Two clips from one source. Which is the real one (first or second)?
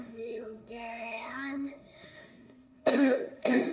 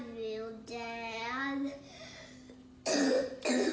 second